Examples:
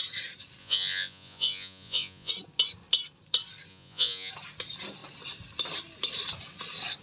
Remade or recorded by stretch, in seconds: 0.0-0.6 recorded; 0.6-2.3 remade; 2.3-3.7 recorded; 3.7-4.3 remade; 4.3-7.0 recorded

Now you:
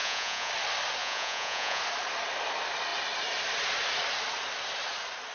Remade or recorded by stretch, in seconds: 0.0-0.5 remade; 0.5-1.0 recorded; 1.0-1.8 remade; 1.8-5.3 recorded

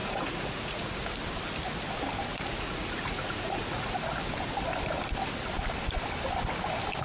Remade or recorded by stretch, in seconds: 0.0-0.9 remade; 0.9-2.3 recorded; 2.3-4.0 remade; 4.0-7.0 recorded

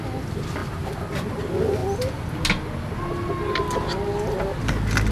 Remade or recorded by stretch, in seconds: 0.0-5.1 recorded

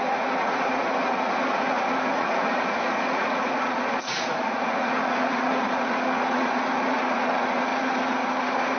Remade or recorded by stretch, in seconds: 0.0-8.8 remade

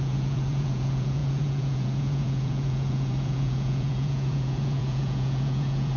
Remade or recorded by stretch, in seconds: 0.0-6.0 remade

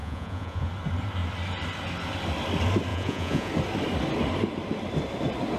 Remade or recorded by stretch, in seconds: 0.0-0.7 remade; 0.7-2.9 recorded; 2.9-3.5 remade; 3.5-5.6 recorded